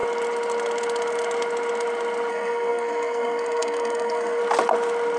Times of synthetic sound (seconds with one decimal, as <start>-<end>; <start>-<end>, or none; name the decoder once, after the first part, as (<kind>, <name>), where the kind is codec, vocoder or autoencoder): 2.3-4.4 (codec, SNAC)